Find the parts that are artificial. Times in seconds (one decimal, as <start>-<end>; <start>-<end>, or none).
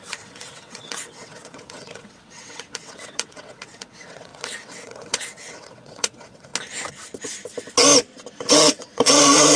0.0-6.5; 8.5-9.6